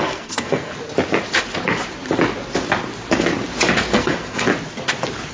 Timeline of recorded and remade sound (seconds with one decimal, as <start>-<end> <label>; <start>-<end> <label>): 0.0-0.7 remade; 0.7-3.9 recorded; 3.9-4.5 remade; 4.5-5.3 recorded